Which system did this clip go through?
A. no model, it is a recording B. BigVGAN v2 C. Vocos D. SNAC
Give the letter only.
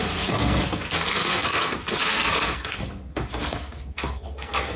D